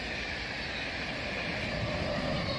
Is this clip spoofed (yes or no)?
no